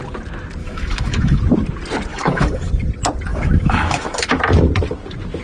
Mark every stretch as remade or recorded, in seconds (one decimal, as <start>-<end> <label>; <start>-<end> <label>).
0.0-0.6 recorded; 0.6-1.4 remade; 1.4-2.1 recorded; 2.1-2.7 remade; 2.7-3.3 recorded; 3.3-4.4 remade; 4.4-5.4 recorded